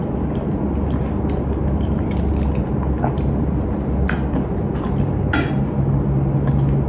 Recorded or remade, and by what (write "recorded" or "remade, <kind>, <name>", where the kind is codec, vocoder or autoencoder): recorded